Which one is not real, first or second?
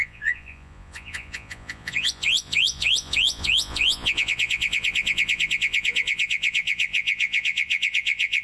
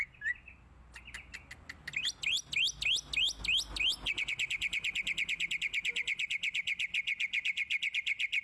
first